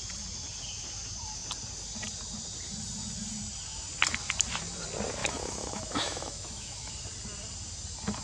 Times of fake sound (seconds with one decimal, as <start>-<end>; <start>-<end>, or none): 5.2-6.9